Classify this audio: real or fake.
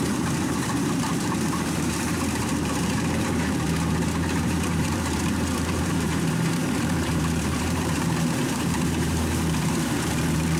fake